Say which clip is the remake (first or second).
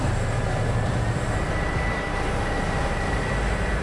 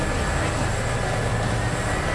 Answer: first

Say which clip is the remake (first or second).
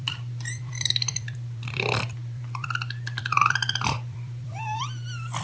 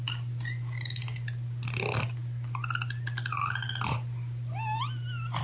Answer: first